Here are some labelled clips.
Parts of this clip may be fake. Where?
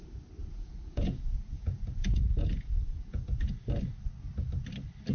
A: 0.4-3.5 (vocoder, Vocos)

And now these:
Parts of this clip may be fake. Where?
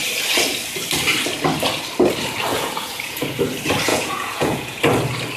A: 2.5-3.4 (vocoder, Vocos); 3.9-4.8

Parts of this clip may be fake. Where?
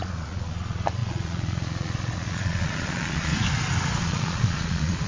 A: 0.0-3.3 (vocoder, Vocos); 4.0-5.1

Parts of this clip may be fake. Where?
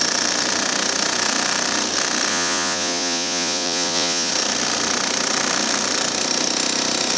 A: 2.3-4.3 (vocoder, Vocos)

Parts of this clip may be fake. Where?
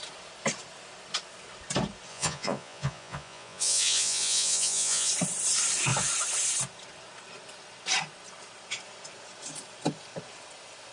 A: 2.1-5.1 (vocoder, Vocos)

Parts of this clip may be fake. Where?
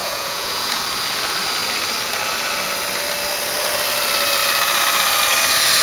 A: 0.0-0.8 (vocoder, Vocos)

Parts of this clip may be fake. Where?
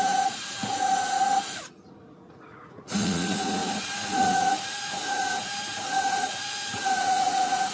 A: 0.0-7.7 (vocoder, Vocos)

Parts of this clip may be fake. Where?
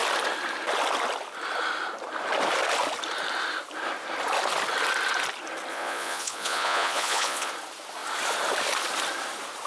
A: 5.7-7.5 (vocoder, Vocos)